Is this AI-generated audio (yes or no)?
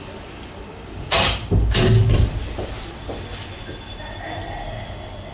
no